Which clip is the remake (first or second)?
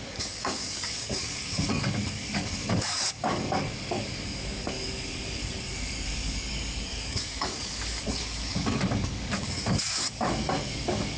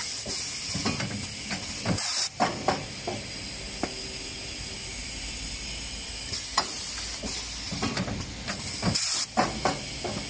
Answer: first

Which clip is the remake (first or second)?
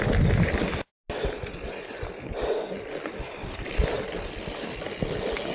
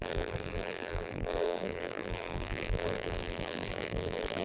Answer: second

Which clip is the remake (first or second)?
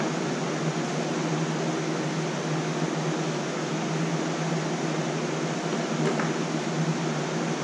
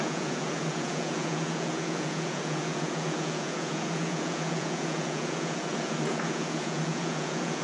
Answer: second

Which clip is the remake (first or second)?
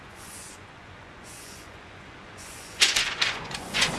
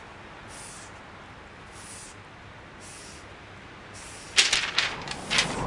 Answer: first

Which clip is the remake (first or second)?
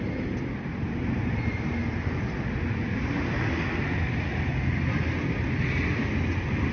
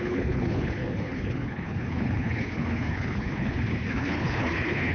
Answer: second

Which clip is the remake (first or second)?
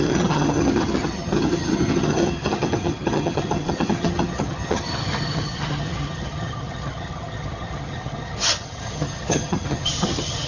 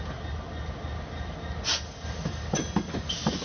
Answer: first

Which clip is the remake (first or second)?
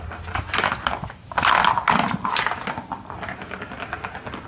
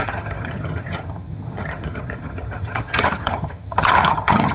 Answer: second